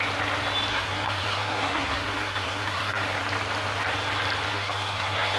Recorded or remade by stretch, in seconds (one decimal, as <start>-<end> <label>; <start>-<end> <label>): 0.0-0.7 recorded; 0.7-3.2 remade; 3.2-4.5 recorded; 4.5-5.4 remade